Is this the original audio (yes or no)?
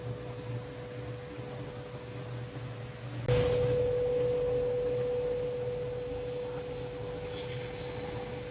yes